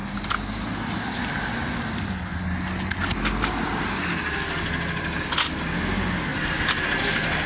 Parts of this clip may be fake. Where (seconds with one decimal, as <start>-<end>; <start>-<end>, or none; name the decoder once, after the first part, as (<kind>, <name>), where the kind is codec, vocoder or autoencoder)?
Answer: none